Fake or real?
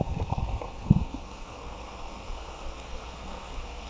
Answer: fake